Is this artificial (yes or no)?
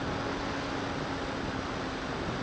no